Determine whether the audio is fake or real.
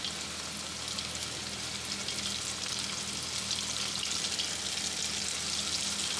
real